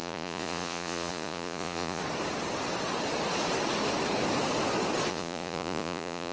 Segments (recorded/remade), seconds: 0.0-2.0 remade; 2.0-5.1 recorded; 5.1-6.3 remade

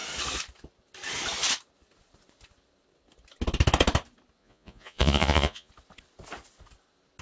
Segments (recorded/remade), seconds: 0.0-4.4 recorded; 4.4-5.7 remade; 5.7-7.2 recorded

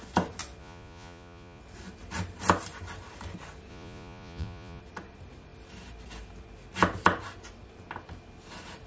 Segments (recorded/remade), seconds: 0.0-0.6 recorded; 0.6-1.6 remade; 1.6-3.7 recorded; 3.7-4.8 remade; 4.8-8.9 recorded

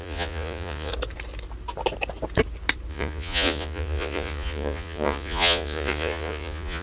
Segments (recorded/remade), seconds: 0.0-0.9 remade; 0.9-2.9 recorded; 2.9-6.8 remade

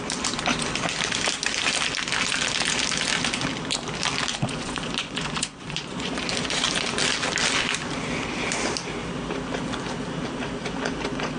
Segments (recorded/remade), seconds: 0.0-4.3 recorded; 4.3-6.2 remade; 6.2-11.4 recorded

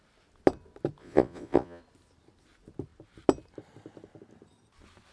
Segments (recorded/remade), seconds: 0.0-1.0 recorded; 1.0-1.8 remade; 1.8-5.1 recorded

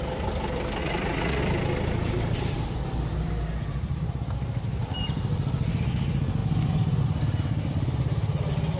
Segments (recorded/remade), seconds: 0.0-0.8 recorded; 0.8-1.4 remade; 1.4-8.8 recorded